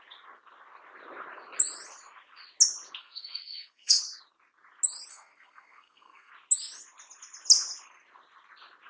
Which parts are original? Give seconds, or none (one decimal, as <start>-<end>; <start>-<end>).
0.0-3.0; 4.0-5.1; 6.3-8.9